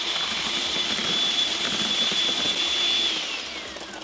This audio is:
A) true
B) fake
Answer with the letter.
A